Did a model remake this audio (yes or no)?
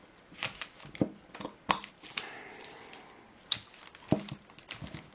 no